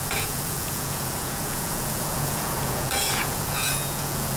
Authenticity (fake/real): fake